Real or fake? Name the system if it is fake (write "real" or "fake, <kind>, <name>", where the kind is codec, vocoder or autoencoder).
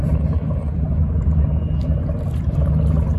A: real